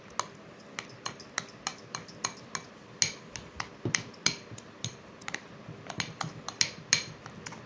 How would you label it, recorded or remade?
recorded